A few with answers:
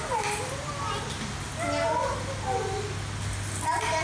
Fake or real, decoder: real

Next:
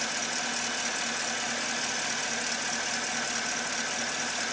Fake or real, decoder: real